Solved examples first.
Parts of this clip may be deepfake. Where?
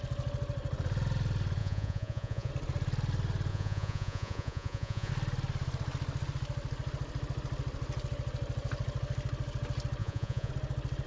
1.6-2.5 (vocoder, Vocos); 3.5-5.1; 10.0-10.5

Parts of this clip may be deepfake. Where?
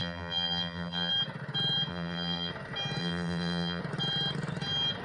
0.0-1.1 (vocoder, BigVGAN v2); 1.9-2.5; 3.0-3.8